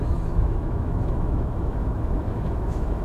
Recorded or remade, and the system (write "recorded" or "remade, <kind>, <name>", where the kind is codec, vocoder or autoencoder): remade, autoencoder, DAC-VAE